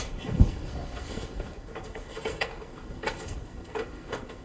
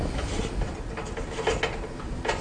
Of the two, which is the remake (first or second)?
first